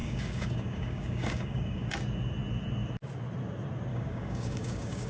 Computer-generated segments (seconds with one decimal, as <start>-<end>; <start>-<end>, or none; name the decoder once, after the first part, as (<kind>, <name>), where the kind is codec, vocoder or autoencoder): 0.0-1.9 (codec, DAC); 3.9-5.1